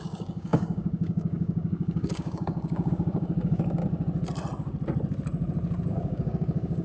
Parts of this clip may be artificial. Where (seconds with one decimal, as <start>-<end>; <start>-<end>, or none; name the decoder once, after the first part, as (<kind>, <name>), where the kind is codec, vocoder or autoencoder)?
0.0-3.8 (codec, DAC); 5.9-6.8